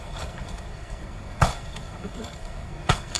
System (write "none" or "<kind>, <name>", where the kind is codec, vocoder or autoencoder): codec, SNAC